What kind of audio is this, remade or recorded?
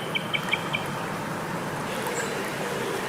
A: recorded